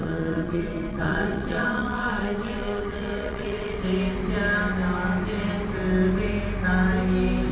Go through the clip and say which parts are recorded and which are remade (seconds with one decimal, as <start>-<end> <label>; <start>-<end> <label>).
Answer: 0.0-3.8 remade; 3.8-7.5 recorded